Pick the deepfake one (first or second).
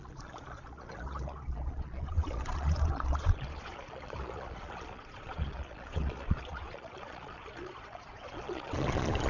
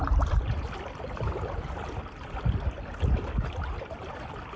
first